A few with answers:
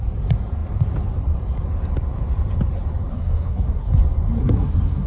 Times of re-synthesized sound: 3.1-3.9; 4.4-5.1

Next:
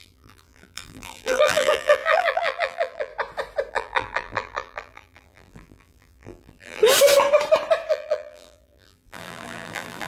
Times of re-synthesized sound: 0.0-3.1; 3.7-6.8; 7.9-10.1

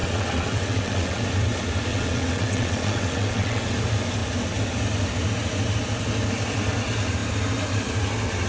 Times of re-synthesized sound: 0.0-1.2; 1.9-3.6

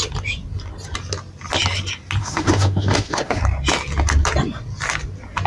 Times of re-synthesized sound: 2.2-3.4